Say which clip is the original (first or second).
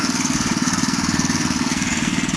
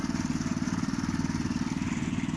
second